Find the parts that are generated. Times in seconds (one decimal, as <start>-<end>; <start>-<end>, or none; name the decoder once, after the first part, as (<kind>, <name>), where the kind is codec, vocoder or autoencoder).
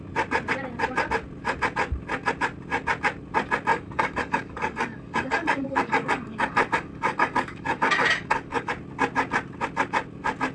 3.7-8.7 (codec, DAC)